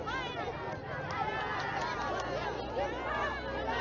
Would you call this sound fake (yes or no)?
no